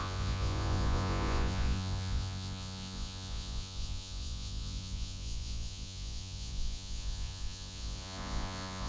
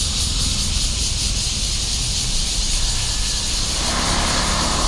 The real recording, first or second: second